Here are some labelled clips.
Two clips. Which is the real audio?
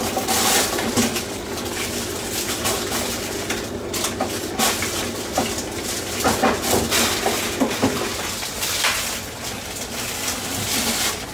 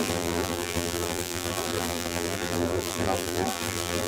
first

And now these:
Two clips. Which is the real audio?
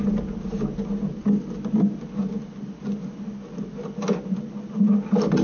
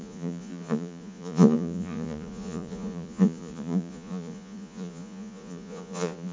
first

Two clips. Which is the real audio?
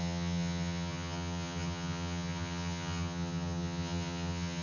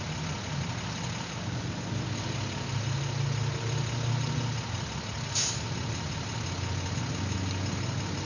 second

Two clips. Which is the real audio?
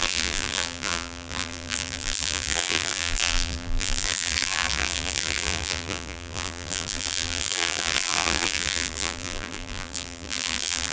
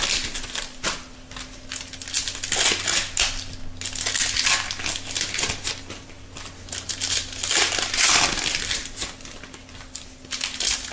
second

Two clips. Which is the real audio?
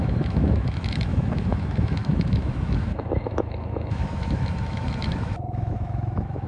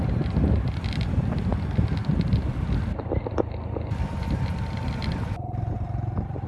second